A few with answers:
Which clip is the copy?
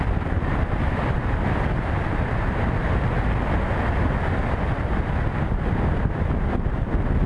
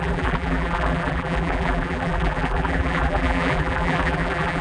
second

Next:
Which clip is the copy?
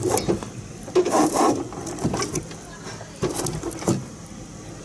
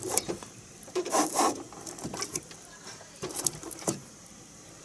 second